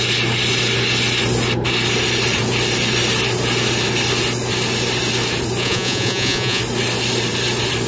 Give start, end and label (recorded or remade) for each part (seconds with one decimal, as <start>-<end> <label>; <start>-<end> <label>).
0.0-5.6 recorded; 5.6-6.6 remade; 6.6-7.9 recorded